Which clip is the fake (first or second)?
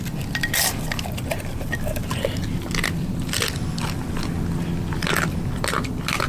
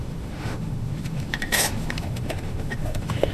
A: second